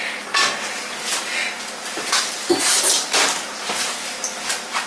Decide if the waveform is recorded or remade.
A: recorded